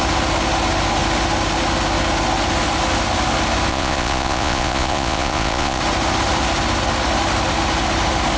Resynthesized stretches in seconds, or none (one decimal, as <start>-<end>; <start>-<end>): 3.7-5.8